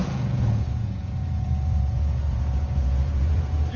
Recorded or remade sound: remade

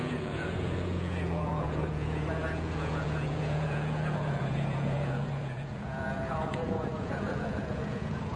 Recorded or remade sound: remade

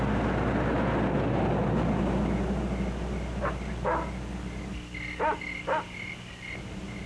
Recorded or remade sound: recorded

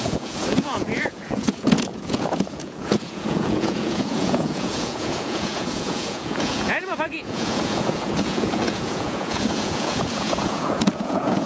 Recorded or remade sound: remade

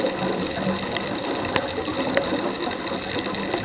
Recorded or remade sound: recorded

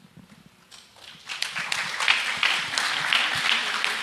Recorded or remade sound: recorded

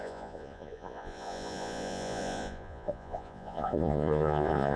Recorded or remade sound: remade